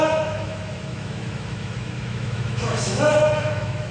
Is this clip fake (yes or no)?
yes